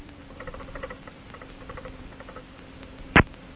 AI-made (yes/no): yes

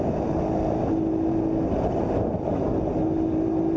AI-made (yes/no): no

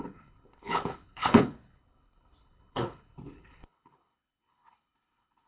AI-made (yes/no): yes